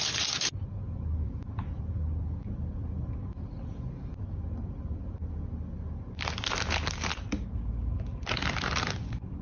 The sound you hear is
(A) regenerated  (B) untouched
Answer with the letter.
B